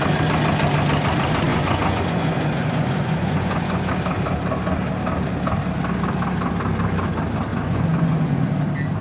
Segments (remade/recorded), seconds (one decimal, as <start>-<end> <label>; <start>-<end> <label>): 0.0-1.5 recorded; 1.5-3.9 remade; 3.9-7.5 recorded; 7.5-8.5 remade; 8.5-9.0 recorded